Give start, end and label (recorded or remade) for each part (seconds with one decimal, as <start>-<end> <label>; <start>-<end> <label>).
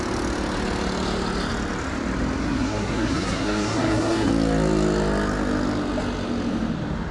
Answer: 0.0-2.4 recorded; 2.4-4.3 remade; 4.3-7.1 recorded